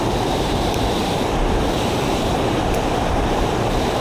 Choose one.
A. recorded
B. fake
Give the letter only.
B